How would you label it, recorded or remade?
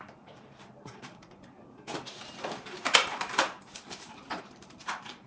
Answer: remade